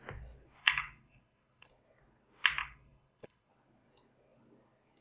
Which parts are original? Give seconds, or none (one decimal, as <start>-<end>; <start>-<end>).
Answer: 0.0-0.6; 1.7-2.6; 3.5-5.0